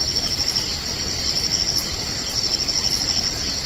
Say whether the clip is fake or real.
real